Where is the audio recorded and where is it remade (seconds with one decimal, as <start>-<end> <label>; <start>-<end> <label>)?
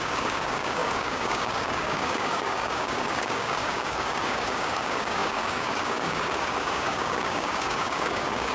0.0-8.5 remade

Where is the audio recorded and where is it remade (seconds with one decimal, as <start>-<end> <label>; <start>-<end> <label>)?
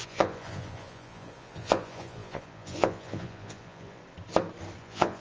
0.0-4.0 remade; 4.0-4.8 recorded; 4.8-5.2 remade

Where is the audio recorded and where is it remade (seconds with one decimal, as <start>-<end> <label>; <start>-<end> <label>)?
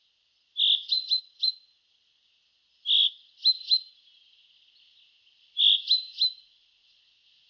0.0-7.5 recorded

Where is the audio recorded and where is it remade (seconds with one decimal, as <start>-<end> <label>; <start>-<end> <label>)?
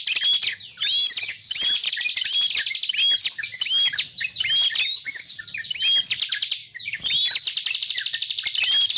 0.0-0.5 recorded; 0.5-2.7 remade; 2.7-6.6 recorded; 6.6-7.3 remade; 7.3-9.0 recorded